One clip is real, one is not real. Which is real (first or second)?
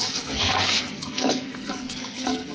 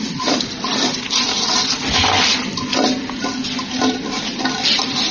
second